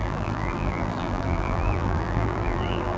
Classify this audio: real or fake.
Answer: fake